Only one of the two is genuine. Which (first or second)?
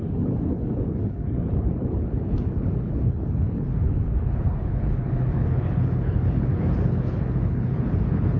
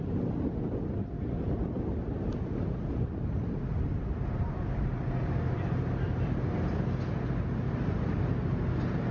second